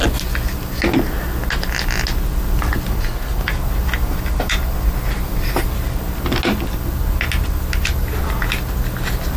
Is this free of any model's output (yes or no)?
yes